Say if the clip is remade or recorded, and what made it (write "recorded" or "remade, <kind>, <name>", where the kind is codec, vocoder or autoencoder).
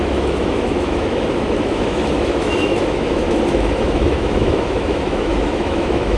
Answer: remade, autoencoder, DAC-VAE